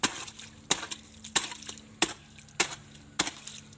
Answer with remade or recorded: recorded